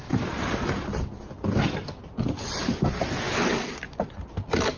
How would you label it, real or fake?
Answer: real